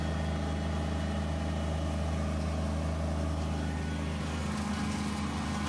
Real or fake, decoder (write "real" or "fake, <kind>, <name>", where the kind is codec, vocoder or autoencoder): real